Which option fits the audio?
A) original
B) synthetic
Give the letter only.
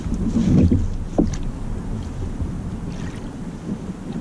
A